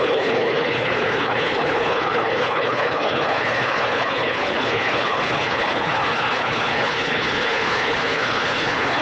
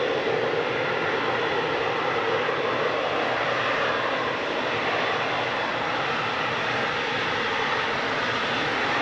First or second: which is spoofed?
first